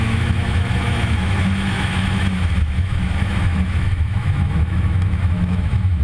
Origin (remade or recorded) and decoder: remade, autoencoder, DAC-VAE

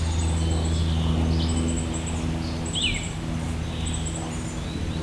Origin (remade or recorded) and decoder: recorded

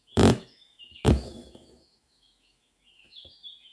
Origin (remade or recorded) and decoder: remade, autoencoder, DAC-VAE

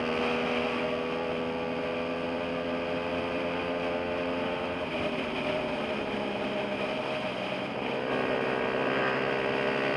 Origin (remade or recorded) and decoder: recorded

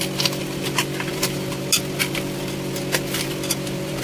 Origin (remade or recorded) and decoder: recorded